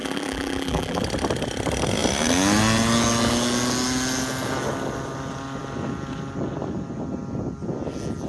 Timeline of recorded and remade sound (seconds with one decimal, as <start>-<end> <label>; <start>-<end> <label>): 0.0-1.0 remade; 1.0-8.3 recorded